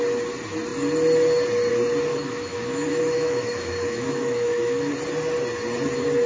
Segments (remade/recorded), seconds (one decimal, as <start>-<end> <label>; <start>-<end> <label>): 0.0-2.1 recorded; 2.1-4.9 remade; 4.9-6.3 recorded